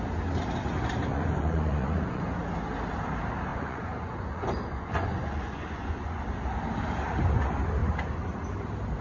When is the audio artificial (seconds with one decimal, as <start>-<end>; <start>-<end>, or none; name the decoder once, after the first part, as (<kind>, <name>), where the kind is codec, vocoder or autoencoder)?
1.1-2.4 (vocoder, Vocos); 3.5-6.2